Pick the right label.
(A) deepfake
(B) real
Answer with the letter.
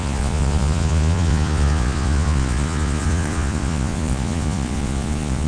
A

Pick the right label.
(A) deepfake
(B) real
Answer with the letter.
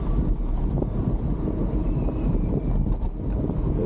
B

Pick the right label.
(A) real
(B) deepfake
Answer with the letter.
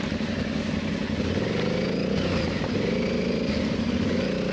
A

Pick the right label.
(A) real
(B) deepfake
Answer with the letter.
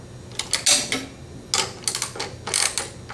A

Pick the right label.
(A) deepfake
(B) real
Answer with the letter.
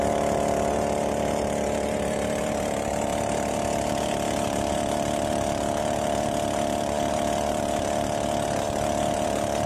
B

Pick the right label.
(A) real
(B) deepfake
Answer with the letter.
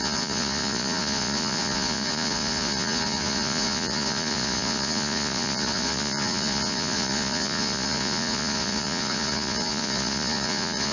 B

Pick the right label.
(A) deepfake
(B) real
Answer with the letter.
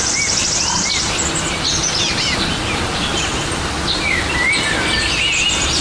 B